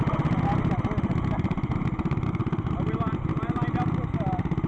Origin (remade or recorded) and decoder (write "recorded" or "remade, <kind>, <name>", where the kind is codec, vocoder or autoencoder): recorded